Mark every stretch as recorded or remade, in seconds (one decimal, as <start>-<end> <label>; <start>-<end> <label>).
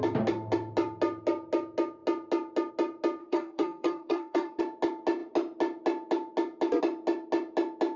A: 0.0-3.2 recorded; 3.2-4.6 remade; 4.6-8.0 recorded